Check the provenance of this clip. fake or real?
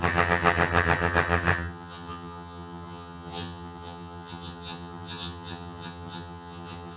fake